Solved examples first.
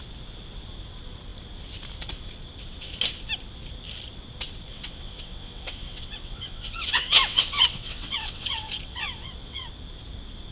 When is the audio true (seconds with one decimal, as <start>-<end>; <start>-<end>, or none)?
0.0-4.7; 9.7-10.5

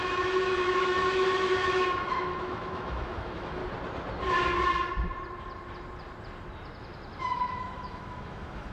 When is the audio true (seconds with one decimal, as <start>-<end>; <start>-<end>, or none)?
3.6-7.2

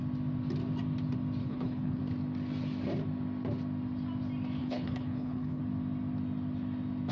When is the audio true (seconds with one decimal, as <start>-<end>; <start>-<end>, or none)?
0.0-1.4; 2.0-4.6; 5.6-7.1